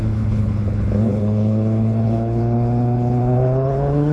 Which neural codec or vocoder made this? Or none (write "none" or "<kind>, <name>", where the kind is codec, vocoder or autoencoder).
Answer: codec, HILCodec